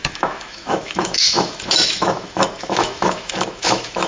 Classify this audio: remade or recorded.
remade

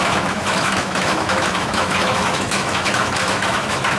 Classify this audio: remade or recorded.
remade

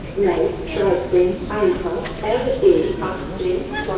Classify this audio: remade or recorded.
remade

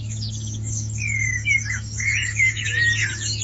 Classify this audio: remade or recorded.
remade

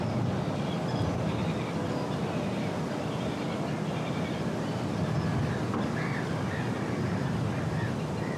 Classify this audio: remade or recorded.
recorded